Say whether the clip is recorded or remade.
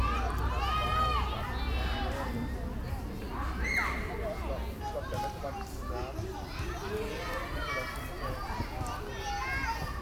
recorded